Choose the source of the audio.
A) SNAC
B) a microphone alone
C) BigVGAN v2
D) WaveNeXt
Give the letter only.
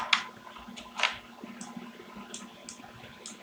B